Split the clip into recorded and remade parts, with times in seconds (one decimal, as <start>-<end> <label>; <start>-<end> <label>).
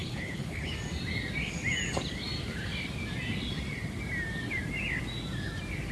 0.0-0.7 remade; 0.7-5.9 recorded